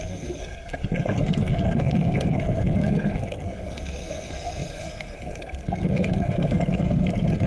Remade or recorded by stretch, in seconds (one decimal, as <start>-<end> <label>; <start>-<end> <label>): 0.0-7.5 remade